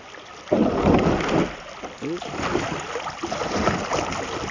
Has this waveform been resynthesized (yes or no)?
no